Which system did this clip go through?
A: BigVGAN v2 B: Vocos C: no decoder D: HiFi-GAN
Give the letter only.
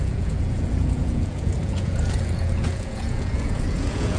B